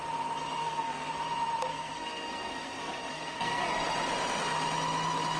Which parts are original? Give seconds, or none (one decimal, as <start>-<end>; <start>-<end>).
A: 0.0-0.6; 1.1-1.7; 3.7-5.4